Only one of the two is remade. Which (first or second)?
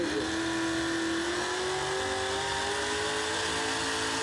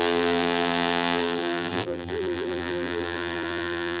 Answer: second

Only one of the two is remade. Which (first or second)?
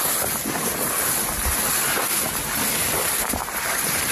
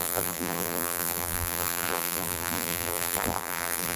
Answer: second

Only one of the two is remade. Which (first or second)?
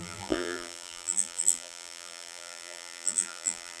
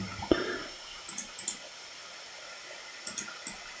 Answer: first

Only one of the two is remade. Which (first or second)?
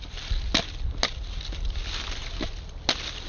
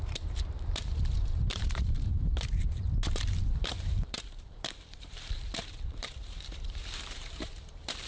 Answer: second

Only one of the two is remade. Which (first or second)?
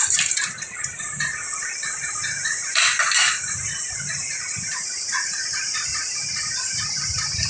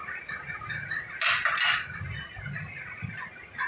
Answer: first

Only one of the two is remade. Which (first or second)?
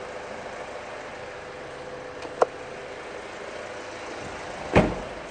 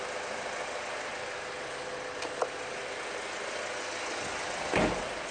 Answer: first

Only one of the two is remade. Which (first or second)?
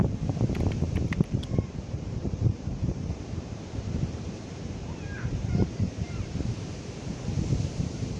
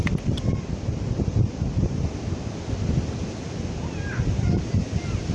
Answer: first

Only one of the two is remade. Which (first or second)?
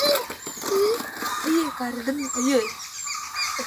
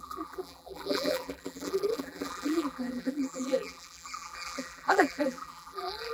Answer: second